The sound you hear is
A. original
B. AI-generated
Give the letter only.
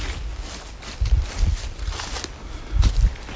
A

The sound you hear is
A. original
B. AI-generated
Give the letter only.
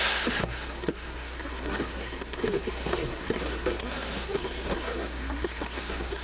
B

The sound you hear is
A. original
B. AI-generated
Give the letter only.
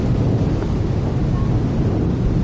A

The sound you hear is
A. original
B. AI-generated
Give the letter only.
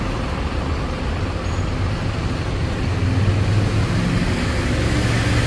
A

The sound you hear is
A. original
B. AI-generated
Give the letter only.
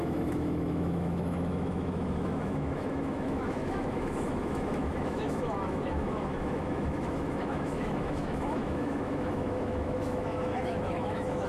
B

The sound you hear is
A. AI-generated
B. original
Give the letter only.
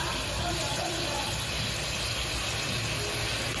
B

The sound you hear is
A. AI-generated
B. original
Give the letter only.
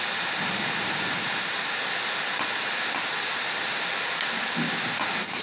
B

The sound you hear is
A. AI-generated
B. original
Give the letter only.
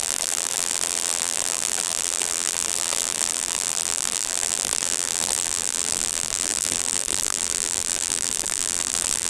A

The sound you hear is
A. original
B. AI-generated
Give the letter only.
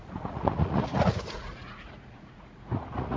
B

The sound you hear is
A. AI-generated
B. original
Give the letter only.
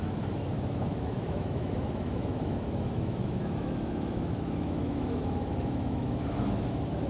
A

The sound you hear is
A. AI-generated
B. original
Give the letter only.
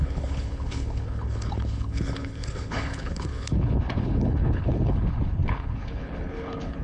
A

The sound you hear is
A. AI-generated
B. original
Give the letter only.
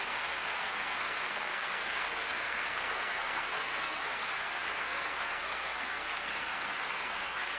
A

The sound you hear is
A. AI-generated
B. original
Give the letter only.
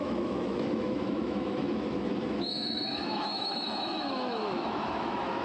A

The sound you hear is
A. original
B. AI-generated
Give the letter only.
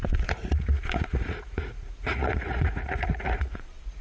B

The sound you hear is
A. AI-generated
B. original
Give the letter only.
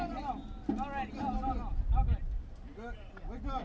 B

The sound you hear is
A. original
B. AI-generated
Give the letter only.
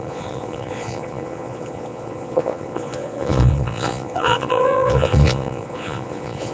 B